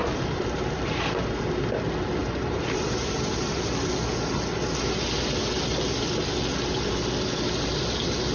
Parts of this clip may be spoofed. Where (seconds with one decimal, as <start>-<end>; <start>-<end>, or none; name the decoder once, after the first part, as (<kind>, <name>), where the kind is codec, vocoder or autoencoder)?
0.0-1.0 (vocoder, BigVGAN v2); 2.2-3.7